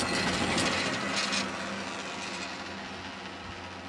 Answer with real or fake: real